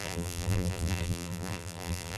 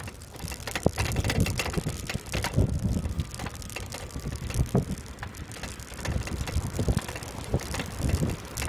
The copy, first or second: first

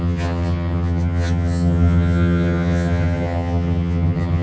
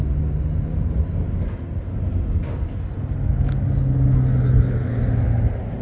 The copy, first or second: first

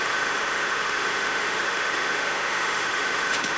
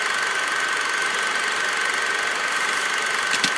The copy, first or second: first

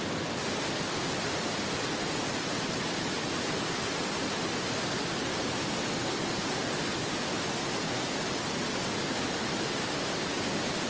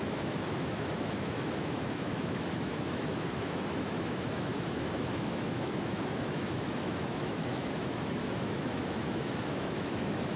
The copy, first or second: second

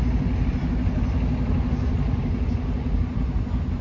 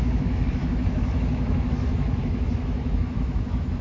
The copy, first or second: second